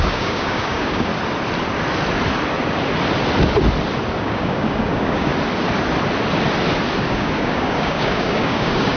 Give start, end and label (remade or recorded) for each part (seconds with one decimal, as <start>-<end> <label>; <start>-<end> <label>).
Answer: 0.0-1.1 remade; 1.1-4.2 recorded; 4.2-5.3 remade; 5.3-7.0 recorded; 7.0-9.0 remade